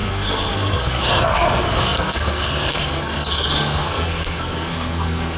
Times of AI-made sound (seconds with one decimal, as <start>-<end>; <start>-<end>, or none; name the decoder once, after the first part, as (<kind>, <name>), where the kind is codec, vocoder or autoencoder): 0.0-5.4 (codec, SNAC)